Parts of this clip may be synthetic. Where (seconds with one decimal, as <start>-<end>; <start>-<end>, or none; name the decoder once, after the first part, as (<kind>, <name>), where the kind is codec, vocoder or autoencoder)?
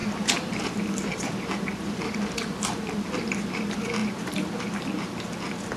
0.0-3.5 (vocoder, BigVGAN v2); 4.0-4.5